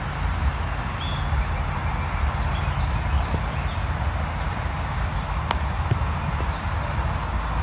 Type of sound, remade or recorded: recorded